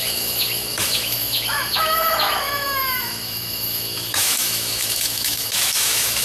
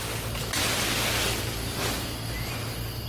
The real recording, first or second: second